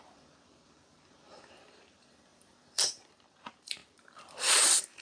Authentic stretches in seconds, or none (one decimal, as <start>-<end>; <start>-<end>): none